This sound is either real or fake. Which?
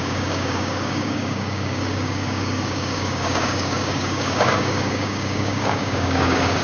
fake